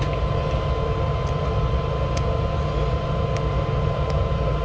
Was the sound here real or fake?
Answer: real